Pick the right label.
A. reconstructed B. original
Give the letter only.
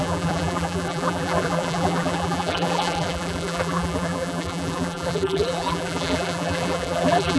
A